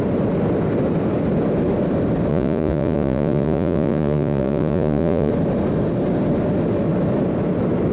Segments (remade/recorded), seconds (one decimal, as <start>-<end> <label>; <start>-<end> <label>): 0.0-2.3 recorded; 2.3-5.3 remade; 5.3-7.9 recorded